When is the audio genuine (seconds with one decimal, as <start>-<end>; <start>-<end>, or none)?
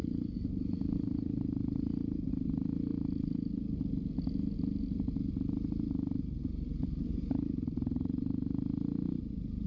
2.9-6.1